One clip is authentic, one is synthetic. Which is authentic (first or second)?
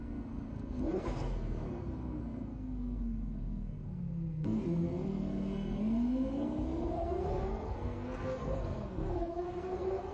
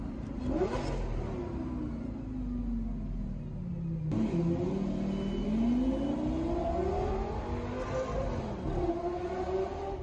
second